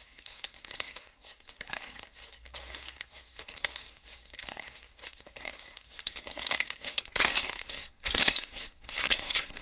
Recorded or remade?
remade